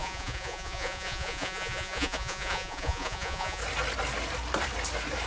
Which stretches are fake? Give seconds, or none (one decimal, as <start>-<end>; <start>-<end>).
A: 0.0-3.6